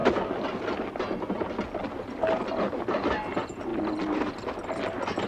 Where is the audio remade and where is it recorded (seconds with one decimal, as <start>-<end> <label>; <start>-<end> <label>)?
0.0-5.3 recorded

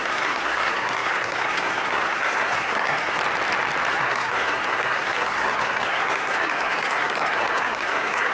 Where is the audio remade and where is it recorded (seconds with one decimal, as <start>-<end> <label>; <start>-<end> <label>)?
0.0-3.2 remade; 3.2-3.9 recorded; 3.9-8.3 remade

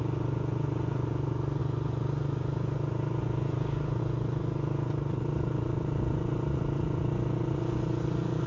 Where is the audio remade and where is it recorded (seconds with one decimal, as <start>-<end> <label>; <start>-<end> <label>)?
0.0-8.5 remade

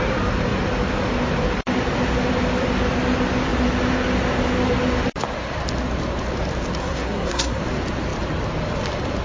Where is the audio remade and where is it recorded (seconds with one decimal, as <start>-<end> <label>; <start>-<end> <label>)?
0.0-6.8 recorded; 6.8-7.6 remade; 7.6-9.2 recorded

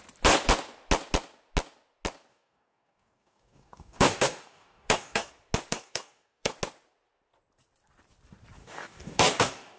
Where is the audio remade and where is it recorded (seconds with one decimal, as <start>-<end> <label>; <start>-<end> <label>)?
0.0-2.3 recorded; 2.3-5.3 remade; 5.3-5.7 recorded; 5.7-6.5 remade; 6.5-8.6 recorded; 8.6-9.8 remade

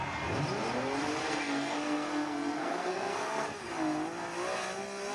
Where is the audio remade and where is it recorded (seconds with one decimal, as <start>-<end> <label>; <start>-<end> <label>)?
0.0-1.2 recorded; 1.2-3.6 remade; 3.6-5.1 recorded

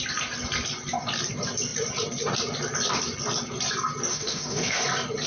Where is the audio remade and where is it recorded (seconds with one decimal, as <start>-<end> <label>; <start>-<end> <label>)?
0.0-4.1 recorded; 4.1-4.8 remade; 4.8-5.3 recorded